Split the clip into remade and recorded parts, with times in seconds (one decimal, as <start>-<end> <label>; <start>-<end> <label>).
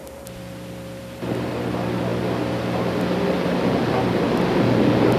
0.0-5.2 recorded